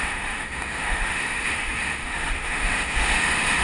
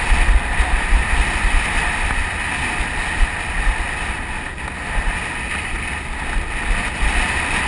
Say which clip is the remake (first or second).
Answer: first